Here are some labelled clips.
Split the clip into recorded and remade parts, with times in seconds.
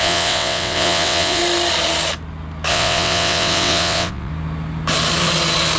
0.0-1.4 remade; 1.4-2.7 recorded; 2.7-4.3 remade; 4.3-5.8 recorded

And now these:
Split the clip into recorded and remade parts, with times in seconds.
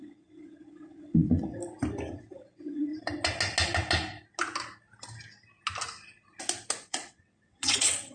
0.0-1.6 remade; 1.6-2.1 recorded; 2.1-2.9 remade; 2.9-6.9 recorded; 6.9-8.1 remade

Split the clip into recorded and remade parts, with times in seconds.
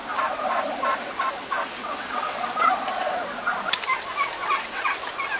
0.0-1.8 recorded; 1.8-2.7 remade; 2.7-4.4 recorded; 4.4-5.0 remade; 5.0-5.4 recorded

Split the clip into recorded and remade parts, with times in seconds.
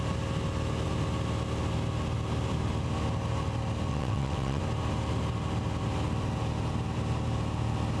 0.0-3.9 recorded; 3.9-4.6 remade; 4.6-8.0 recorded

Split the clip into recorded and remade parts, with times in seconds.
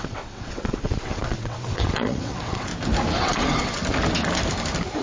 0.0-2.7 remade; 2.7-3.2 recorded; 3.2-3.8 remade; 3.8-5.0 recorded